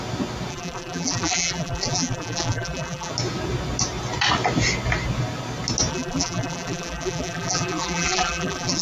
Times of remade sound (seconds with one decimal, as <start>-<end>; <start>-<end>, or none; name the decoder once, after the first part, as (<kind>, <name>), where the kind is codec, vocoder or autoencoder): 0.5-3.1 (vocoder, BigVGAN v2); 5.9-8.8